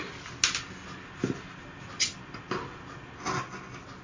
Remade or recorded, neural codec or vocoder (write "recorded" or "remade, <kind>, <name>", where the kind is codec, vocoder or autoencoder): recorded